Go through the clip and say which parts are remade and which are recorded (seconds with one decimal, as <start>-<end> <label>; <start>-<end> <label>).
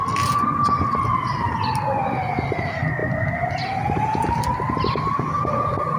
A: 0.0-3.0 recorded; 3.0-5.2 remade; 5.2-6.0 recorded